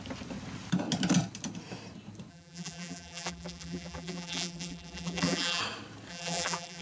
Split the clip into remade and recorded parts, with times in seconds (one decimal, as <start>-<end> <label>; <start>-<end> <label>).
0.0-2.3 recorded; 2.3-5.6 remade; 5.6-6.1 recorded; 6.1-6.8 remade